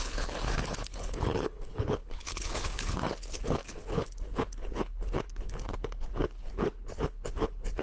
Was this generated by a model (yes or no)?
yes